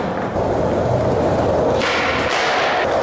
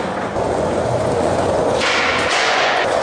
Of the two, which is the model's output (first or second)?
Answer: second